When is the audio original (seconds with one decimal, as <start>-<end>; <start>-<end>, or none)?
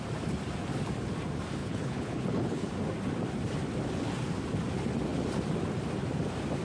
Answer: 0.0-1.6; 2.7-6.6